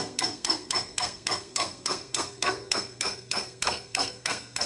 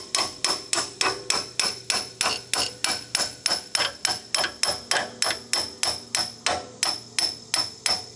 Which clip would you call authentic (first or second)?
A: second